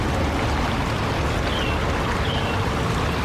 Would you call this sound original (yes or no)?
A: yes